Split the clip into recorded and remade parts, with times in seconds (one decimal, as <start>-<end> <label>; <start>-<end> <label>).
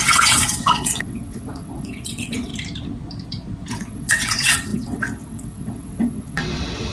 0.0-2.5 remade; 2.5-3.7 recorded; 3.7-6.9 remade